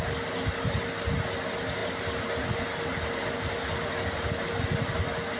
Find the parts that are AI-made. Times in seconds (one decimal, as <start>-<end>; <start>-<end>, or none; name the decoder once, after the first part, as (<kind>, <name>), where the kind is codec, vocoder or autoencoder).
none